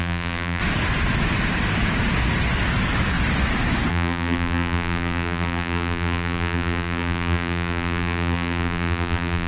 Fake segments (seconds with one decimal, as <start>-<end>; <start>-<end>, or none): 0.0-0.6; 3.9-9.5